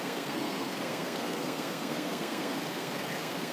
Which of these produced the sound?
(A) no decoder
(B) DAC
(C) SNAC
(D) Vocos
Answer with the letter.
C